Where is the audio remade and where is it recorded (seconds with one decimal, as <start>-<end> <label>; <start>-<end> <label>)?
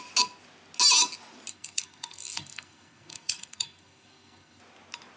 0.0-1.5 recorded; 1.5-4.6 remade; 4.6-5.2 recorded